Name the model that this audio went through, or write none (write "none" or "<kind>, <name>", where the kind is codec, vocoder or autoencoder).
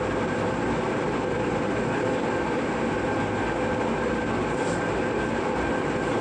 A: none